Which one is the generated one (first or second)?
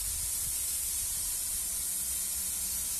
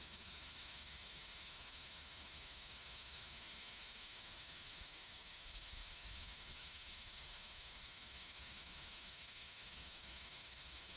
second